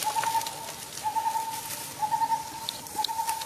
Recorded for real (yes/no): yes